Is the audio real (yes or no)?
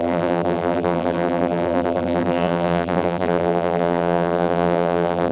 no